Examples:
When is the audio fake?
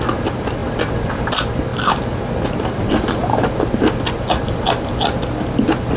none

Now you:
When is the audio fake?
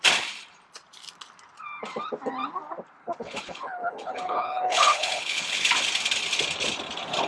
3.0-5.7 (codec, HILCodec)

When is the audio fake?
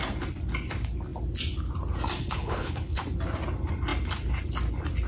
2.2-3.0 (codec, HILCodec)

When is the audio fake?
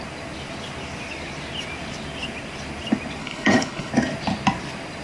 3.2-3.9 (codec, HILCodec)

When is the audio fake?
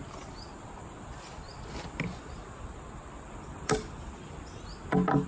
none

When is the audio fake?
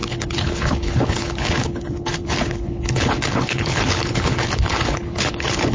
0.0-5.7 (codec, HILCodec)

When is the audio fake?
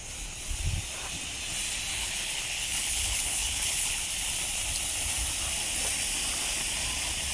2.0-4.1 (codec, HILCodec)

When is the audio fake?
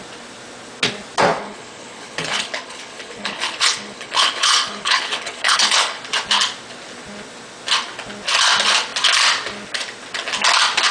1.3-6.0 (codec, HILCodec)